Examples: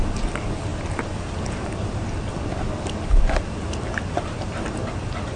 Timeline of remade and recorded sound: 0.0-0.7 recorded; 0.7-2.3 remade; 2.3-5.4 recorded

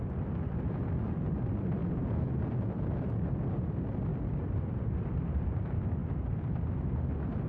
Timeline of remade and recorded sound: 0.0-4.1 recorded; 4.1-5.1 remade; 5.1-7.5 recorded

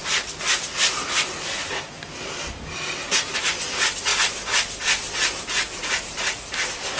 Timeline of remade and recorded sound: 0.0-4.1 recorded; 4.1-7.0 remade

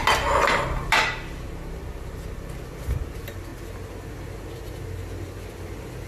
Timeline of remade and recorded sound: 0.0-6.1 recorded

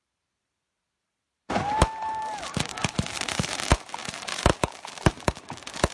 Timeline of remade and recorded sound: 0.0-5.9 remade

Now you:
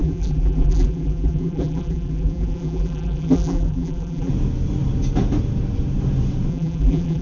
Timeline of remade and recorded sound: 0.0-4.3 remade; 4.3-6.5 recorded; 6.5-7.2 remade

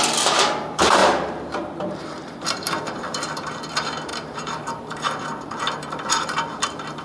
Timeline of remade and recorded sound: 0.0-7.0 remade